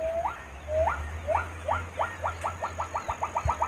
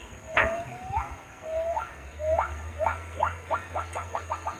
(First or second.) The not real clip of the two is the second